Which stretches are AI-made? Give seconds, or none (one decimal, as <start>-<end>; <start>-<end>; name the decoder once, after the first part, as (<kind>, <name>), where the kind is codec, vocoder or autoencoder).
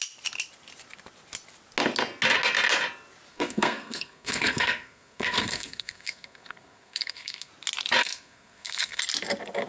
3.3-7.5 (codec, SNAC); 8.0-9.0